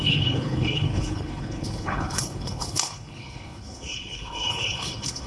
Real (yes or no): no